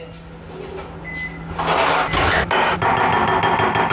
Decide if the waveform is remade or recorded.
recorded